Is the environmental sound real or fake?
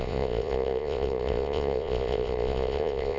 fake